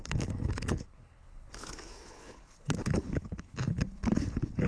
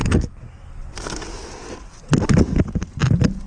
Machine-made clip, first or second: first